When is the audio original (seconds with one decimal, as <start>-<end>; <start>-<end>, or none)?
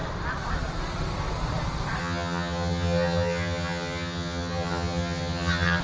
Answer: 0.0-2.0